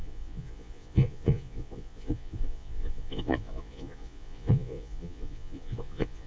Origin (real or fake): fake